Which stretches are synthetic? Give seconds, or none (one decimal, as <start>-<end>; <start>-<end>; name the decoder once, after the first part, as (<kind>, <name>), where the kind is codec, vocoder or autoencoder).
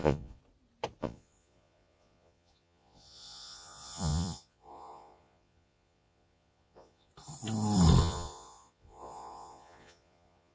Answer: 0.0-0.4 (vocoder, Vocos); 1.0-7.1; 8.0-10.5